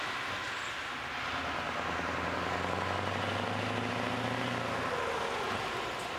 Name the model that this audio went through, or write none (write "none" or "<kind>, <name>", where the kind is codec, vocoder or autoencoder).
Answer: none